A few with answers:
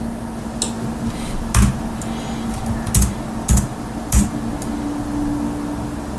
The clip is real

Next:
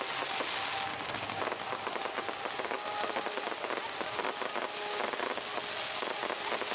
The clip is real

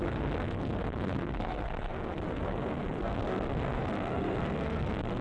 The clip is fake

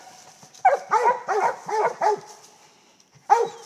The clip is real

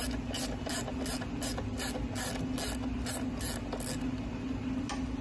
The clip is real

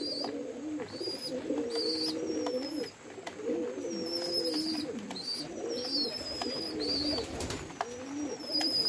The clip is real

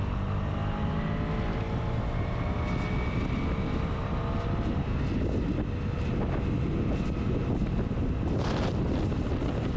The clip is real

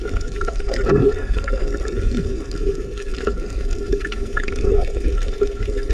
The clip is fake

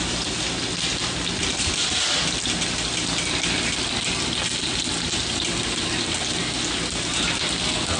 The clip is real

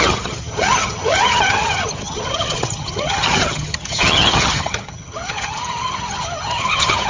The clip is fake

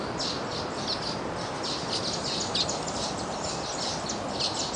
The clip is real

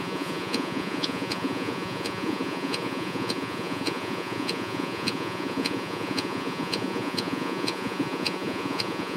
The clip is fake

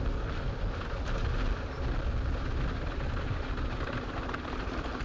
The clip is real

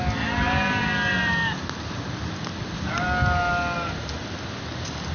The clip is real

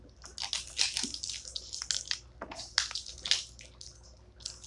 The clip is real